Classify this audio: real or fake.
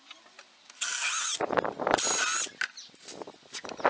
real